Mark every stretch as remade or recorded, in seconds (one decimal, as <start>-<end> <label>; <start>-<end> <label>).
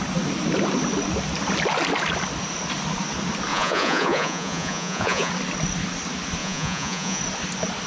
0.0-3.5 recorded; 3.5-5.3 remade; 5.3-6.4 recorded; 6.4-7.2 remade; 7.2-7.9 recorded